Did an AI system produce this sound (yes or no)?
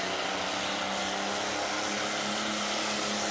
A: no